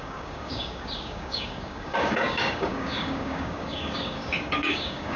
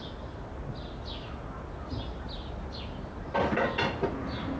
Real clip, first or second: second